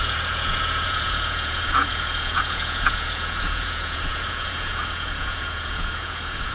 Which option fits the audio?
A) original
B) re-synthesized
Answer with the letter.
B